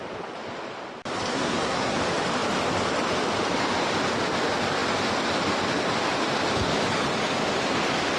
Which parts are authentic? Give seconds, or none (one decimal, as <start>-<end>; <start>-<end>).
0.0-1.3; 2.0-8.2